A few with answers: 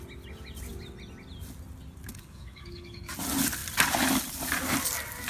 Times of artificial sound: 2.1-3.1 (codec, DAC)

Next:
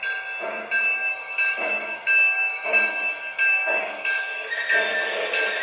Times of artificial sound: 1.1-4.5 (codec, DAC)

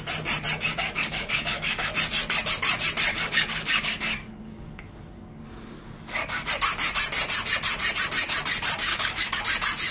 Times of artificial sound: 0.7-1.9 (codec, DAC); 3.1-6.5; 8.9-9.4